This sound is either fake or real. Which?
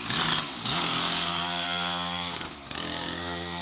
fake